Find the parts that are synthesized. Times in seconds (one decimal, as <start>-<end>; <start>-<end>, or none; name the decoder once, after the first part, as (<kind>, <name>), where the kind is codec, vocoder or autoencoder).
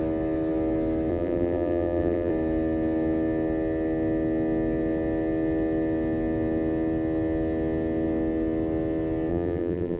1.1-2.3 (vocoder, BigVGAN v2); 9.3-10.0